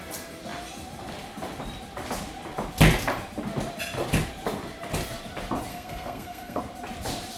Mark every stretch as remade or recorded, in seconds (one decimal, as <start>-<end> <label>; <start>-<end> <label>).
0.0-5.7 recorded; 5.7-6.6 remade; 6.6-7.4 recorded